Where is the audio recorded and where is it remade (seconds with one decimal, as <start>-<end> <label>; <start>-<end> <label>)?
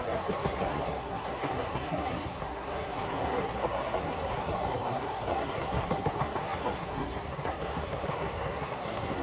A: 0.0-9.2 remade